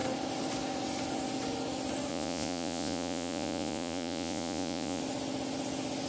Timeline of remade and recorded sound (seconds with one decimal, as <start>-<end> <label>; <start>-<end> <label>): 0.0-2.1 recorded; 2.1-5.0 remade; 5.0-6.1 recorded